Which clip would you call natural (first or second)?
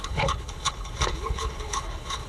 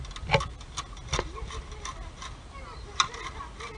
second